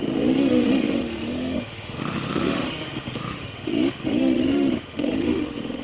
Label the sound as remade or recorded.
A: remade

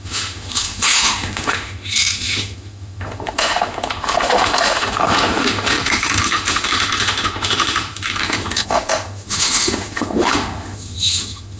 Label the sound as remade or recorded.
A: remade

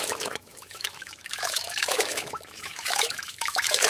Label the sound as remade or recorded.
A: remade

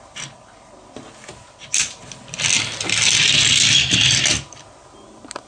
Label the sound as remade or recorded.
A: recorded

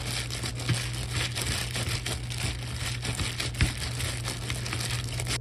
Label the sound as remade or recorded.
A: recorded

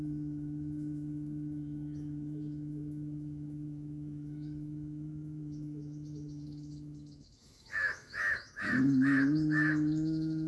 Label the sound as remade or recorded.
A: remade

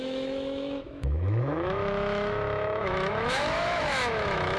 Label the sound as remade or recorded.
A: remade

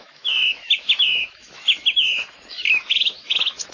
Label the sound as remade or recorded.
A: remade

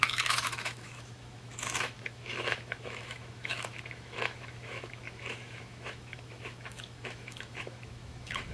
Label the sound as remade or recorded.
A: remade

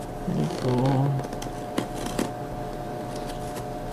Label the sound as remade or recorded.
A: recorded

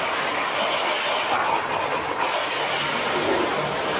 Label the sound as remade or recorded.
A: recorded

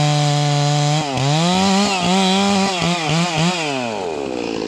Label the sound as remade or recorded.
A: recorded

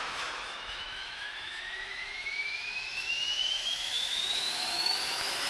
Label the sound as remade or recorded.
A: remade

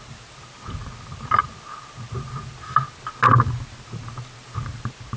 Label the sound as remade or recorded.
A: recorded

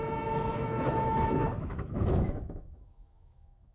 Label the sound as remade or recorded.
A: remade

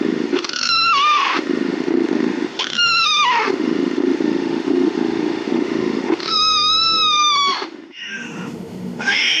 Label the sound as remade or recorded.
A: remade